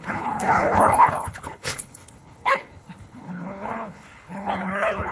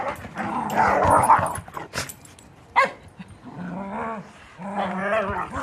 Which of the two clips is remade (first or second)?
first